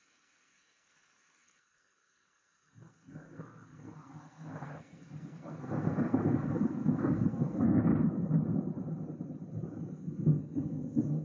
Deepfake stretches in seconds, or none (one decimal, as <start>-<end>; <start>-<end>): 0.0-7.9; 9.8-11.2